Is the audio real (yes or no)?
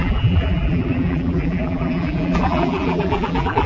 no